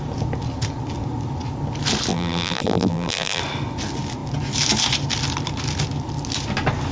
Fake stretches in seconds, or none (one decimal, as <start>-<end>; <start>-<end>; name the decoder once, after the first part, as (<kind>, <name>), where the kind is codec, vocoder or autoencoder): 2.1-3.4 (vocoder, BigVGAN v2)